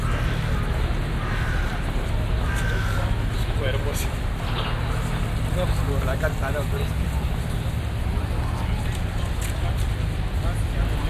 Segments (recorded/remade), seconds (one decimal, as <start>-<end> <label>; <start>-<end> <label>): 0.0-11.1 recorded